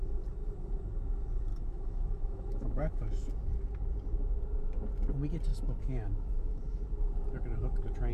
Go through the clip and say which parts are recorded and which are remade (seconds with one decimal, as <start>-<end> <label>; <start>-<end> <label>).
0.0-1.5 recorded; 1.5-3.3 remade; 3.3-5.5 recorded; 5.5-6.8 remade; 6.8-8.1 recorded